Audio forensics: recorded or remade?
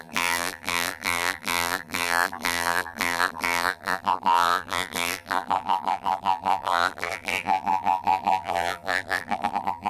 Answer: remade